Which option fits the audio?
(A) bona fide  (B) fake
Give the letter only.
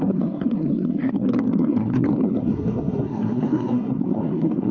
B